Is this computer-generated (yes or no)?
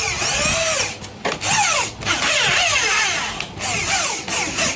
no